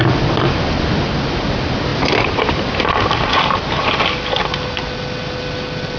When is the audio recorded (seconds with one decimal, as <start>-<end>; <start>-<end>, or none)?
0.0-6.0